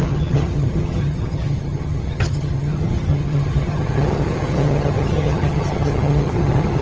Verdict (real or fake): fake